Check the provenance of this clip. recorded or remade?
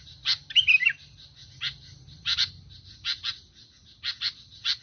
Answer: remade